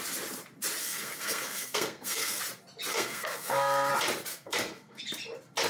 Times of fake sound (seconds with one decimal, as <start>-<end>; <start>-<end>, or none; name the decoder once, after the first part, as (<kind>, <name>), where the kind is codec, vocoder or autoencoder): 0.8-2.4 (codec, SNAC); 2.9-3.9; 4.3-5.0